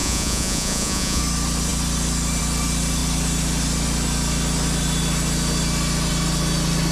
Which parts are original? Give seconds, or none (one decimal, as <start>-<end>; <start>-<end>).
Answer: 1.2-6.9